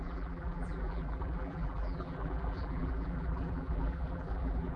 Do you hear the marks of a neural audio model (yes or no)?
yes